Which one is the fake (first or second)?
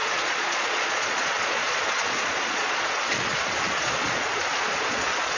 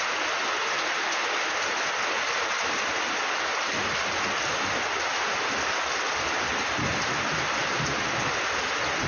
first